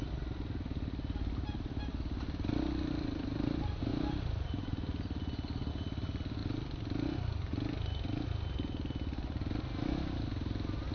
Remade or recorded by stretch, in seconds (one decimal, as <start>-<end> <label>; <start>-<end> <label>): 0.0-1.9 remade; 1.9-2.9 recorded; 2.9-6.4 remade; 6.4-10.9 recorded